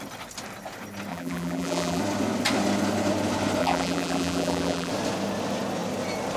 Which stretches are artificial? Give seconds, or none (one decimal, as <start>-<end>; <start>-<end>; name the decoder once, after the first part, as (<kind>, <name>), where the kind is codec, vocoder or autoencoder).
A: 1.1-2.0 (vocoder, BigVGAN v2); 3.6-4.9